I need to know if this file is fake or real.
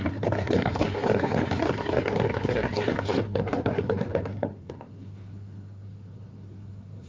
fake